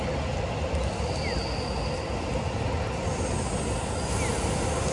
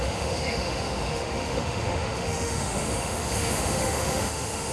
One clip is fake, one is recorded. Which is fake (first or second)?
second